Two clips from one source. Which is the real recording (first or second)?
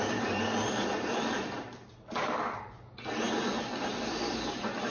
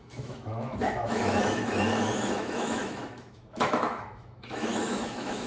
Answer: first